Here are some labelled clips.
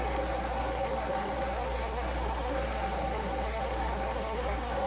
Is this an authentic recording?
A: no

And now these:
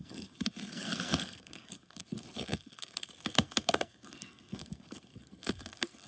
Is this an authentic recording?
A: no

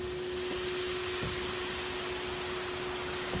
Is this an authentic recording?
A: yes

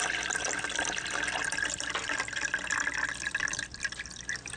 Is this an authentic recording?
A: yes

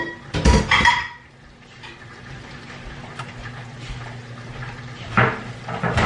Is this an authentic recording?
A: yes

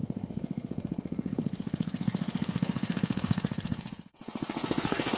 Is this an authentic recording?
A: no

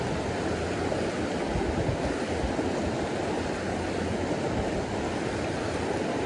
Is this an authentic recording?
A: yes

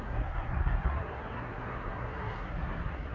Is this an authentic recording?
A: no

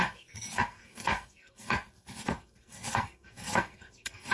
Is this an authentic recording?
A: no